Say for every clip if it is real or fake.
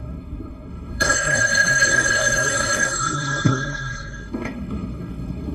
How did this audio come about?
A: fake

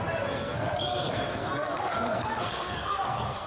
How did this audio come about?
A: fake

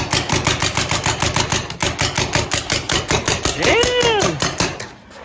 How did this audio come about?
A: real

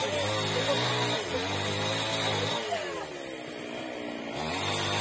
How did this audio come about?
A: real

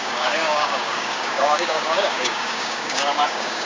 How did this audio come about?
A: fake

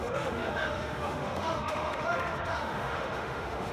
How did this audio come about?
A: fake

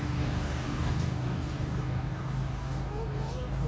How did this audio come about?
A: fake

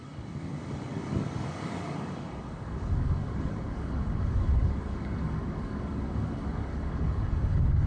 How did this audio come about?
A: fake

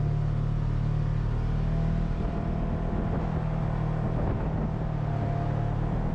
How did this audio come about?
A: real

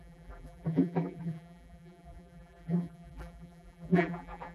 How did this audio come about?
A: fake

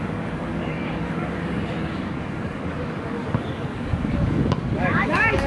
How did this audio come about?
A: fake